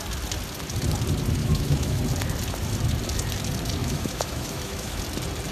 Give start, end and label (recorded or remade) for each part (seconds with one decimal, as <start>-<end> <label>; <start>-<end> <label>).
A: 0.0-1.4 recorded; 1.4-2.0 remade; 2.0-3.8 recorded; 3.8-5.0 remade; 5.0-5.5 recorded